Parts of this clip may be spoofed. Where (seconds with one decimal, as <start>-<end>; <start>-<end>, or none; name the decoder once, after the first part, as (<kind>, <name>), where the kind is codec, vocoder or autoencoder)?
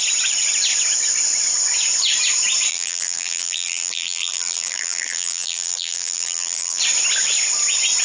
2.7-6.8 (vocoder, BigVGAN v2)